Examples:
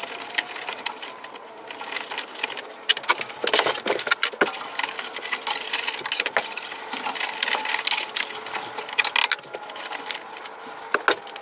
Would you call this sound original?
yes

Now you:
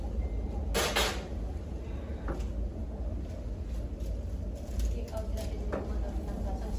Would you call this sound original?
yes